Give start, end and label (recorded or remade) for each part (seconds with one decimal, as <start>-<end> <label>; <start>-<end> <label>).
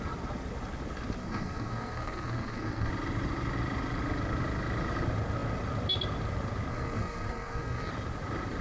0.0-1.2 recorded; 1.2-2.9 remade; 2.9-6.7 recorded; 6.7-7.9 remade; 7.9-8.6 recorded